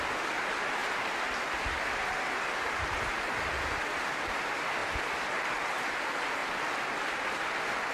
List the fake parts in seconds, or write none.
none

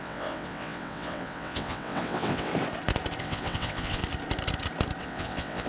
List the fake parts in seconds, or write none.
0.0-2.5 (vocoder, WaveNeXt); 3.2-4.0; 5.0-5.7